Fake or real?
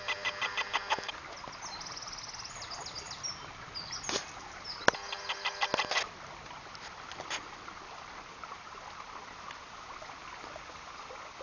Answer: real